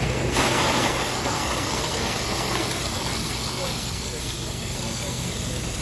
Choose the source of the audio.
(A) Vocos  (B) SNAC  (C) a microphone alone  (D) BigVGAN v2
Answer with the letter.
B